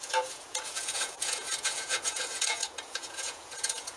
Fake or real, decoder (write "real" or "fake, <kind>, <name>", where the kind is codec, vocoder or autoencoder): fake, vocoder, Vocos